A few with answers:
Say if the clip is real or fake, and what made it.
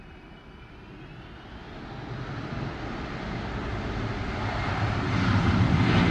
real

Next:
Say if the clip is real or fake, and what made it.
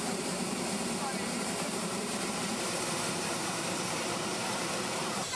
fake, vocoder, BigVGAN v2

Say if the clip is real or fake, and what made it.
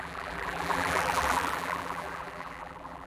fake, vocoder, BigVGAN v2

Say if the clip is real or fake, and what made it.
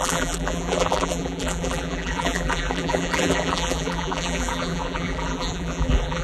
fake, vocoder, BigVGAN v2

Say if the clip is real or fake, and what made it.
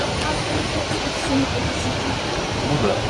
real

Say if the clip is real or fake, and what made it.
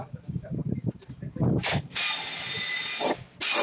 real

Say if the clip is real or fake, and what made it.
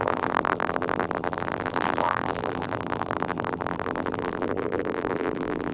fake, vocoder, BigVGAN v2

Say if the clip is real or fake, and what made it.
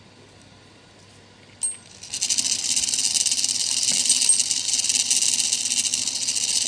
real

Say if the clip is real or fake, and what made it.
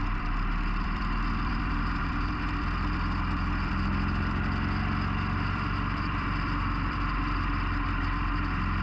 fake, vocoder, BigVGAN v2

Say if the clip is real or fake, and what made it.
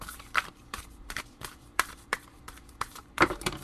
fake, vocoder, BigVGAN v2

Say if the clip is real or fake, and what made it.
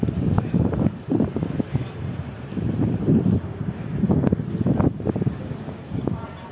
fake, vocoder, BigVGAN v2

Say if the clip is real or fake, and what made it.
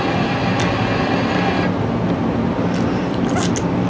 real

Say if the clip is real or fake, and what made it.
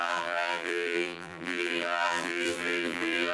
fake, vocoder, BigVGAN v2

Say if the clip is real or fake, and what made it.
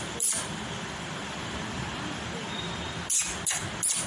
fake, vocoder, BigVGAN v2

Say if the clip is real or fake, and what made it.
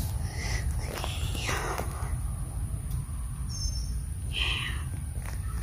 real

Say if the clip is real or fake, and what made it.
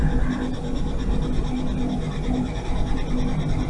real